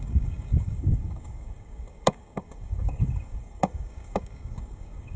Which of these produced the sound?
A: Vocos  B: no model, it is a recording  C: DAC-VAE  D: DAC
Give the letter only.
D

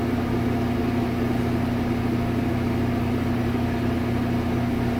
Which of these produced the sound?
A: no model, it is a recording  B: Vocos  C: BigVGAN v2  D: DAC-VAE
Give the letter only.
A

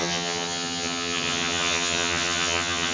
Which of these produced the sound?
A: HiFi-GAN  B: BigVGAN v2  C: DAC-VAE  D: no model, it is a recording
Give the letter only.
A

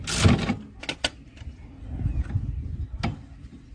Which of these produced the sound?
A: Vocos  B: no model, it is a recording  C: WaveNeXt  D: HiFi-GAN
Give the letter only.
B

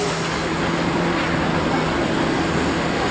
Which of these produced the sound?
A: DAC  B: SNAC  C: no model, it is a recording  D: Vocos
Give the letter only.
C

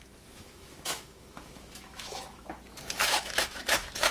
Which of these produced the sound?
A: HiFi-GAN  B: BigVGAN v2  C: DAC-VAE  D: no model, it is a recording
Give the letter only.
C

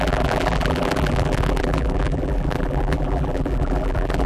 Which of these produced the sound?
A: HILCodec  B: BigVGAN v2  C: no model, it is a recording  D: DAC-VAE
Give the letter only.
B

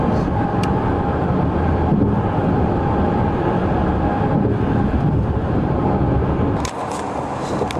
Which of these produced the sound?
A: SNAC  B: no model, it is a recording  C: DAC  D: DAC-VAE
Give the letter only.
B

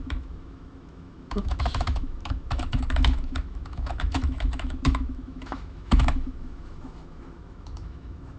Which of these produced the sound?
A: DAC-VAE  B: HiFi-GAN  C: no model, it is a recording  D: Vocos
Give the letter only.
A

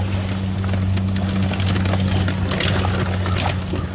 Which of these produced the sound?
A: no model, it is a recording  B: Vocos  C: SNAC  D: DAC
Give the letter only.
A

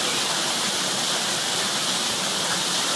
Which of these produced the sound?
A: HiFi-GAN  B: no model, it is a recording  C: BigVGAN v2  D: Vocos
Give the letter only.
B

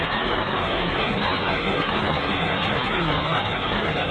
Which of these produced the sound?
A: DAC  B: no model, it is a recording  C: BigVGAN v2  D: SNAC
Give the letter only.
D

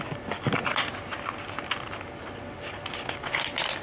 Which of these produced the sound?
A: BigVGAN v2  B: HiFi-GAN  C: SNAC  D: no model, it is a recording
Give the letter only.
D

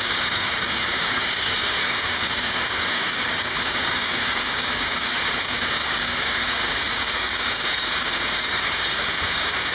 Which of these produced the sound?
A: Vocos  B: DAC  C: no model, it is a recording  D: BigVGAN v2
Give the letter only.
B